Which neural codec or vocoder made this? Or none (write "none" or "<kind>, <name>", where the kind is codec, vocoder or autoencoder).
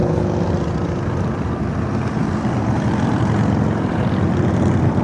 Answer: none